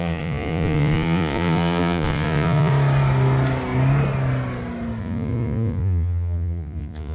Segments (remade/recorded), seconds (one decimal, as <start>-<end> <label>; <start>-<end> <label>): 0.0-2.7 remade; 2.7-5.0 recorded; 5.0-7.1 remade